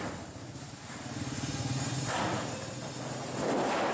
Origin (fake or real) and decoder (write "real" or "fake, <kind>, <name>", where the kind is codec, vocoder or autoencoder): real